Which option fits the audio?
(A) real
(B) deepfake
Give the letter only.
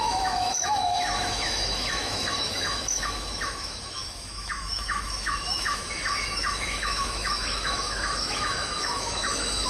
B